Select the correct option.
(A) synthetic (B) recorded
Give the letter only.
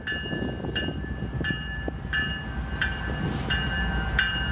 B